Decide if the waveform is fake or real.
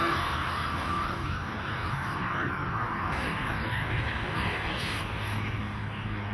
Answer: fake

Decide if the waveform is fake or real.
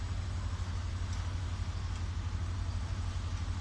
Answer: real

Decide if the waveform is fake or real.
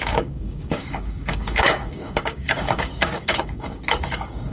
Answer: fake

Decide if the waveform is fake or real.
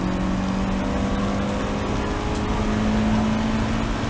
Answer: real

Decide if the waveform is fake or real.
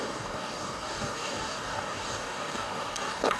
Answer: fake